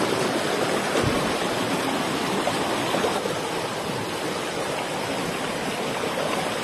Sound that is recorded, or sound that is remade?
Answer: recorded